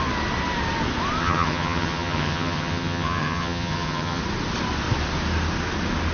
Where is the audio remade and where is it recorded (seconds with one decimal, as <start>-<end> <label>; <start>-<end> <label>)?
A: 0.0-1.2 recorded; 1.2-4.2 remade; 4.2-6.1 recorded